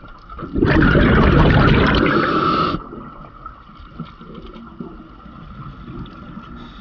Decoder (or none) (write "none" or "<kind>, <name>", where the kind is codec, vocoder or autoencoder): none